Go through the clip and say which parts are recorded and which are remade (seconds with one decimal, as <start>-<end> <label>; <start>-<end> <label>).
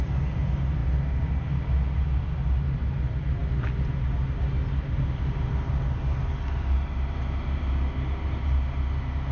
0.0-9.3 recorded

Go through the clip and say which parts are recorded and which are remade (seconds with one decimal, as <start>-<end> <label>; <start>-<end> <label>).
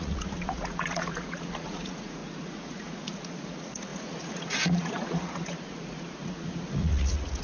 0.0-7.4 remade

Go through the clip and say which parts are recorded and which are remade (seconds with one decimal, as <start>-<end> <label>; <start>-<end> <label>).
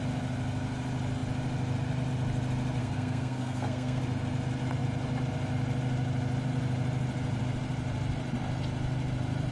0.0-2.8 recorded; 2.8-4.0 remade; 4.0-9.5 recorded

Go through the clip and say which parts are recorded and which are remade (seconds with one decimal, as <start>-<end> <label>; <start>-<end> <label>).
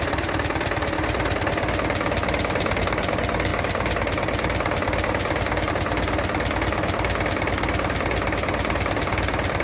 0.0-2.2 recorded; 2.2-3.1 remade; 3.1-9.6 recorded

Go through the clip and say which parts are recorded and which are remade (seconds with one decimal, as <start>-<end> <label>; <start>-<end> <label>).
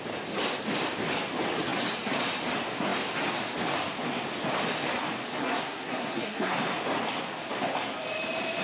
0.0-5.4 recorded; 5.4-6.5 remade; 6.5-8.6 recorded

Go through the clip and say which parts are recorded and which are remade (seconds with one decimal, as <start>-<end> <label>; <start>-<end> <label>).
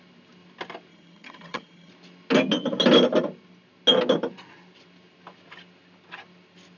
0.0-0.9 recorded; 0.9-1.9 remade; 1.9-6.8 recorded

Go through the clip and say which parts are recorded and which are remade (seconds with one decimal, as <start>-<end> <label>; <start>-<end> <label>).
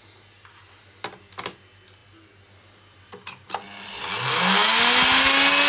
0.0-5.7 recorded